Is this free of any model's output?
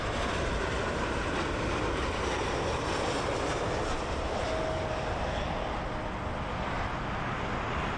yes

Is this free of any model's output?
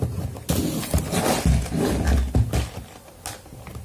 yes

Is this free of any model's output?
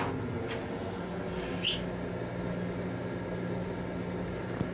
yes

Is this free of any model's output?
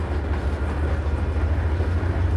yes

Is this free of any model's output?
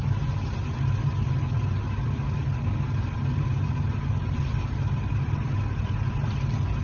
yes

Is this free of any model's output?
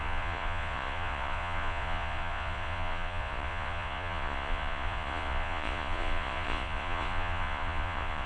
no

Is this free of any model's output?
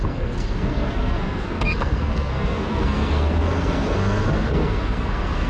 no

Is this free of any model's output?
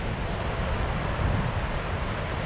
yes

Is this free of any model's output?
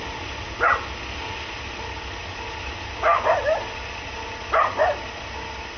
yes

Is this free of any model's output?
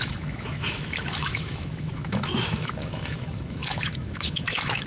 no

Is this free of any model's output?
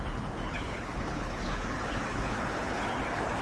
no